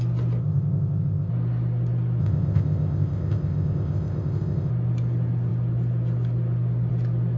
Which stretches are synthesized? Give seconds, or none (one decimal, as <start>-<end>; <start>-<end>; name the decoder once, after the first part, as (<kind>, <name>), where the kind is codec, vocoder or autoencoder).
0.4-1.3 (codec, ZipCodec); 2.2-4.7